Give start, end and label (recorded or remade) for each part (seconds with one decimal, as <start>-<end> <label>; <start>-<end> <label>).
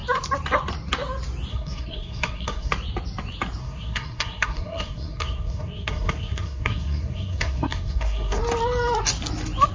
0.0-1.5 recorded; 1.5-2.7 remade; 2.7-3.6 recorded; 3.6-8.4 remade; 8.4-9.7 recorded